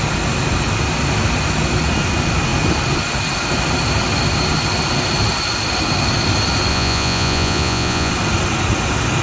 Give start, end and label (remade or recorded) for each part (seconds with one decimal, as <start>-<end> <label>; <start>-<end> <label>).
0.0-6.7 recorded; 6.7-8.1 remade; 8.1-9.2 recorded